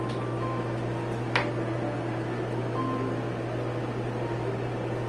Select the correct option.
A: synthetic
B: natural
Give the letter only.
B